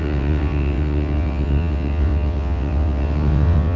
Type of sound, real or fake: fake